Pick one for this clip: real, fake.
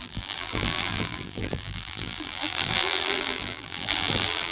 fake